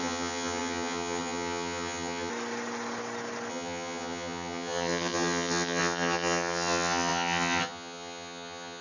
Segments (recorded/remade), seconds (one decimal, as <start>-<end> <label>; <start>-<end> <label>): 0.0-2.3 remade; 2.3-3.5 recorded; 3.5-8.8 remade